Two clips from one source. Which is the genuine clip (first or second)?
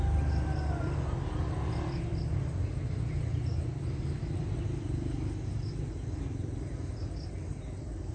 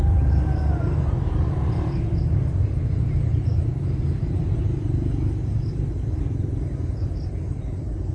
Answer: first